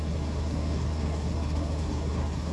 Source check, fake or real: fake